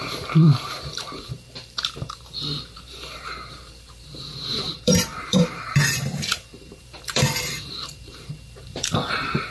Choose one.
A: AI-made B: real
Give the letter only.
A